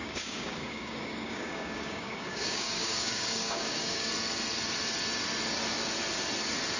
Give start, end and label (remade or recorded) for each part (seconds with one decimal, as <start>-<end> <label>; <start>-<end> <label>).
0.0-4.1 remade; 4.1-6.8 recorded